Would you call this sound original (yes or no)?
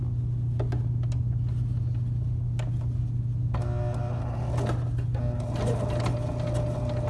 yes